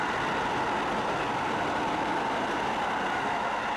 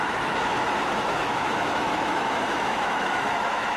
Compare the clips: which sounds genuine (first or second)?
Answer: first